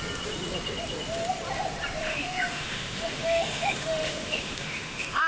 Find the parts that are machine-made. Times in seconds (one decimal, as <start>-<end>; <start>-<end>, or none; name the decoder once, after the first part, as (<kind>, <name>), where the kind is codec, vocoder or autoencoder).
2.0-5.3 (autoencoder, DAC-VAE)